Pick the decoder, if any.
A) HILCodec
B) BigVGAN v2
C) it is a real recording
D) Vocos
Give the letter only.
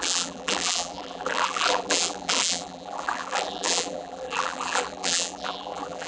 B